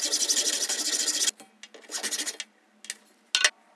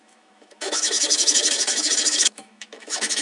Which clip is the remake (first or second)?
second